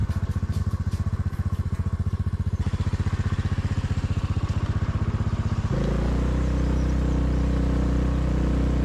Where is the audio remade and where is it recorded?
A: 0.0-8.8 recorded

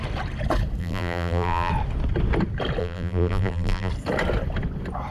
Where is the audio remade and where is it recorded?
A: 0.0-0.8 recorded; 0.8-1.7 remade; 1.7-2.8 recorded; 2.8-3.9 remade; 3.9-5.1 recorded

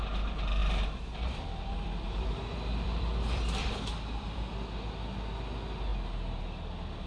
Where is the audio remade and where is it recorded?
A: 0.0-0.6 recorded; 0.6-4.9 remade; 4.9-7.1 recorded

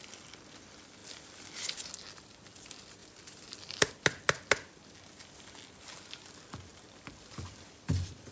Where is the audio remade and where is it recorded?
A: 0.0-3.0 recorded; 3.0-3.9 remade; 3.9-6.7 recorded; 6.7-8.3 remade